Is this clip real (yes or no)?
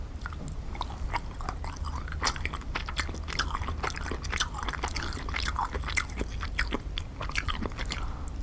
yes